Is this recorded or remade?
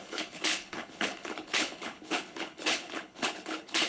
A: remade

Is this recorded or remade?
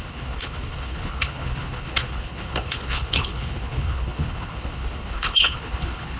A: remade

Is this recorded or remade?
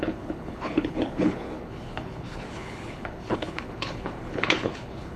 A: remade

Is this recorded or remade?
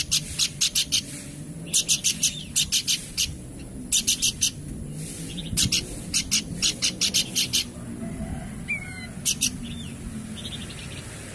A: recorded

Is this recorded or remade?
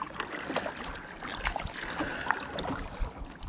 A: recorded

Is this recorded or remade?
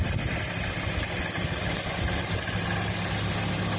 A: recorded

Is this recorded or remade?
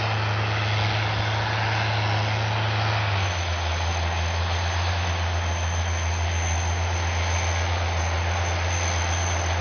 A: recorded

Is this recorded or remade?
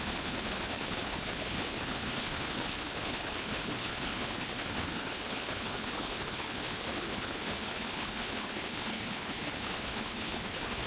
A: remade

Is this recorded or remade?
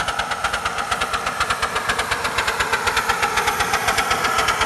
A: recorded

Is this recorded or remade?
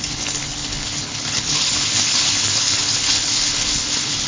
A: remade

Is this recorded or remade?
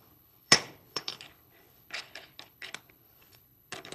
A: remade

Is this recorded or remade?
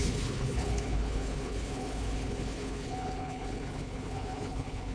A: remade